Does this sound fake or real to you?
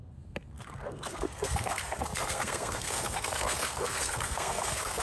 fake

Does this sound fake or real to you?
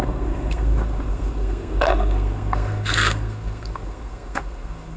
fake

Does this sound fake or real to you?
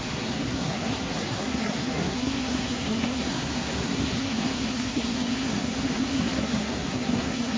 fake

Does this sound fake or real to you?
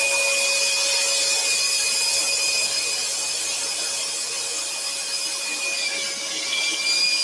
real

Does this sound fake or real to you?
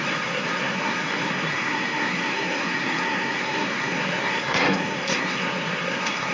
fake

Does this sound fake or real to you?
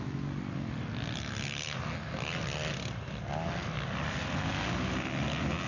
real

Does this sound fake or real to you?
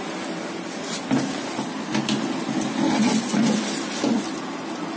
real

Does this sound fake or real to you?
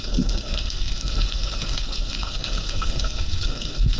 fake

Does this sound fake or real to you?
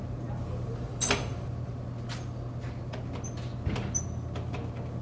real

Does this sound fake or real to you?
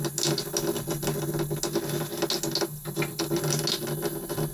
real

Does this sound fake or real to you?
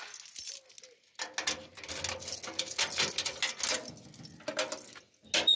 real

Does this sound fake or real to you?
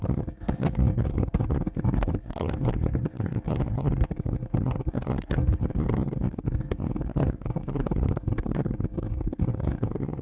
fake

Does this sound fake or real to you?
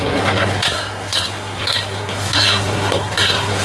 fake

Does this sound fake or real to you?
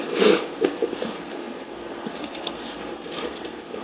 fake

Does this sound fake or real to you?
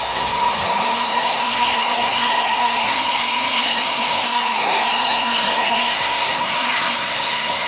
fake